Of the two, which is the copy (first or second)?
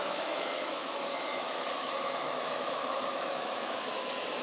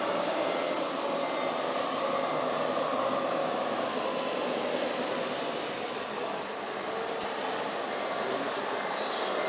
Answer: first